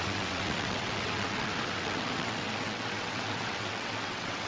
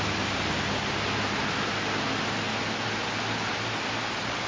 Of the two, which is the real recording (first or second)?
second